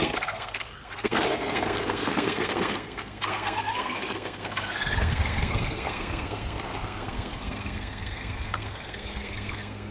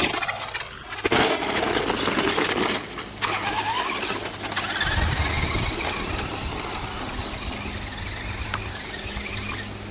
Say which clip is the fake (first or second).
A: first